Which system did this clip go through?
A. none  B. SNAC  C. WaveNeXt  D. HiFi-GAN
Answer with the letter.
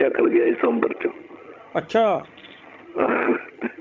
D